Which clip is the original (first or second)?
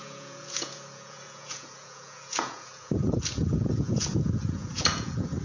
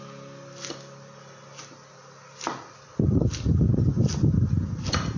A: second